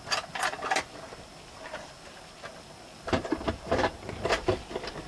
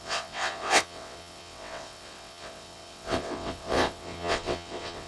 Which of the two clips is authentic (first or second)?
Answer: first